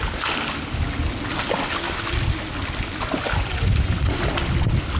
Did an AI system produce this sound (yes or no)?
no